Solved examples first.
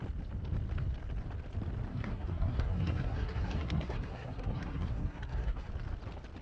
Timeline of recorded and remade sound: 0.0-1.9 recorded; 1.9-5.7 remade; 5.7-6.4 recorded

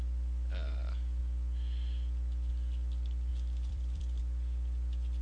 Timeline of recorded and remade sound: 0.0-3.3 recorded; 3.3-4.2 remade; 4.2-5.2 recorded

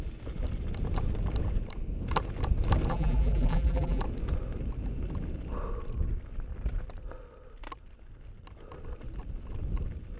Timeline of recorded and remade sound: 0.0-2.9 recorded; 2.9-4.0 remade; 4.0-10.2 recorded